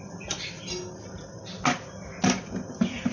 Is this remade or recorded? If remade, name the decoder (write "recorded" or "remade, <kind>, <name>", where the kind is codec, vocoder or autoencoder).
recorded